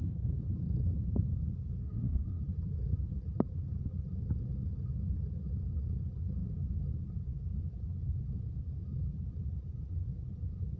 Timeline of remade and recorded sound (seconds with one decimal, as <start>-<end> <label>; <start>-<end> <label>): 0.0-1.8 recorded; 1.8-2.4 remade; 2.4-10.8 recorded